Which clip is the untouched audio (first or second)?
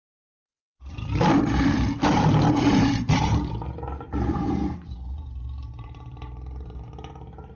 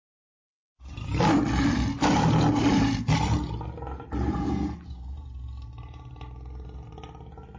second